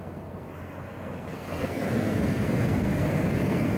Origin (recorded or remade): remade